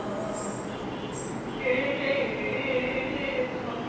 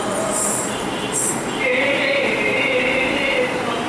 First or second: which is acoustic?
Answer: first